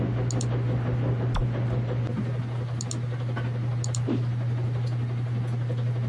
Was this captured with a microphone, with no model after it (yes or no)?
yes